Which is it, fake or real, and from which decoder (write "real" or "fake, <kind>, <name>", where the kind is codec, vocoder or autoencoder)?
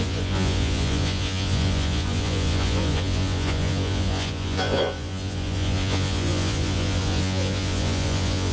fake, vocoder, Vocos